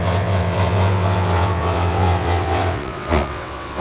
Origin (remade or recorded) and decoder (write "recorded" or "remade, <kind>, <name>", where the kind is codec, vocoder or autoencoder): remade, vocoder, WaveNeXt